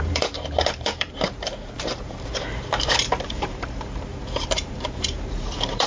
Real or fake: fake